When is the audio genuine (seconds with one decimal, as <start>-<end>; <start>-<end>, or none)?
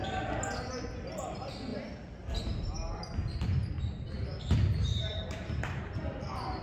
0.0-4.8; 5.9-6.6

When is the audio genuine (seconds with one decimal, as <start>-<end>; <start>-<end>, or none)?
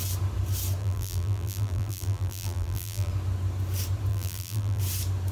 0.0-0.8; 3.1-4.1; 4.8-5.3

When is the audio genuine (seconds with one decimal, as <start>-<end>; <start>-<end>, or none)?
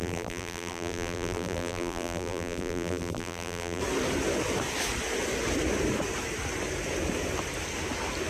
3.8-8.3